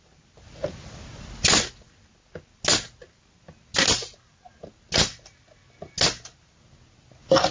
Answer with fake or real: real